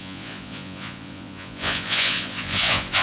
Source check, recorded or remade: remade